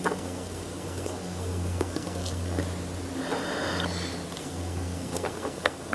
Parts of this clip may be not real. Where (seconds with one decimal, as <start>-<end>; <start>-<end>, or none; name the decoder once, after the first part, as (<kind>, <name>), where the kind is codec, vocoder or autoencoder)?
0.0-2.6 (codec, SNAC); 4.4-5.9